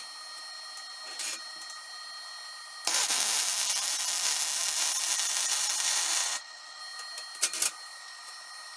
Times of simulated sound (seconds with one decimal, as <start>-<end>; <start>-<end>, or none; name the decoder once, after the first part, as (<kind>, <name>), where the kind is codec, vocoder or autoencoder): 6.2-6.8 (vocoder, WaveNeXt)